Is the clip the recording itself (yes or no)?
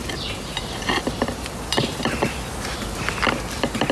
yes